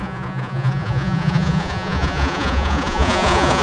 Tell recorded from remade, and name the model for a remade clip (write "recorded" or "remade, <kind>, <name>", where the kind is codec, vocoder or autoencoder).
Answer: remade, vocoder, Vocos